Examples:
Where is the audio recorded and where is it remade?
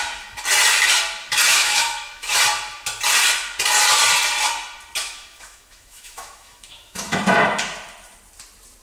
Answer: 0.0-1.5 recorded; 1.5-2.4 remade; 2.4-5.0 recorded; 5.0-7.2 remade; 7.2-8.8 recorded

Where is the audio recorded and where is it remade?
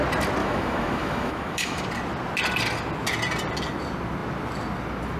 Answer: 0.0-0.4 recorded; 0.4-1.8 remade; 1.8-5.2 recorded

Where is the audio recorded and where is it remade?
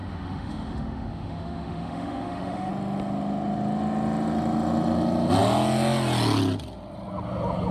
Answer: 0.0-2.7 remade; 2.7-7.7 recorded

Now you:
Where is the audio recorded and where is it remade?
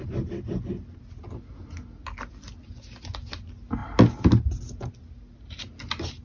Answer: 0.0-6.2 recorded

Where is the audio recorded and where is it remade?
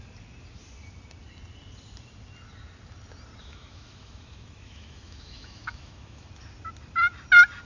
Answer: 0.0-3.4 recorded; 3.4-6.3 remade; 6.3-7.7 recorded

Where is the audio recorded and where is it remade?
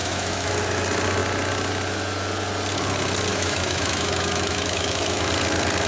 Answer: 0.0-0.5 remade; 0.5-3.3 recorded; 3.3-5.3 remade; 5.3-5.9 recorded